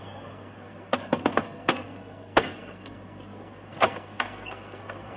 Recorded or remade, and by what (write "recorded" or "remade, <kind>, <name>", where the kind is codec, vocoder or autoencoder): remade, codec, SNAC